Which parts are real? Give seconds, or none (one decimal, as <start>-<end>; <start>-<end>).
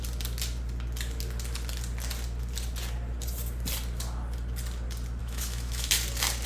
0.0-5.2; 5.9-6.5